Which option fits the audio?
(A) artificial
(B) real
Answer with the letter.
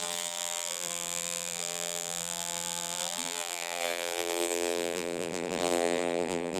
A